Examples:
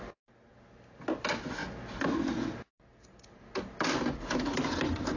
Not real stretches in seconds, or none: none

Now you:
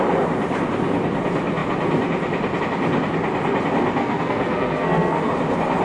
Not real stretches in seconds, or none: 4.0-5.3 (codec, SNAC)

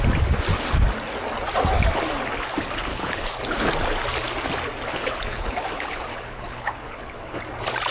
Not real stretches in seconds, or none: 2.9-3.7 (codec, HILCodec); 4.9-7.4